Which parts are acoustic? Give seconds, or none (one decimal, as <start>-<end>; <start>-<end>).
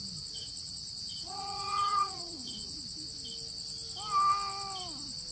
0.0-0.4; 2.8-5.3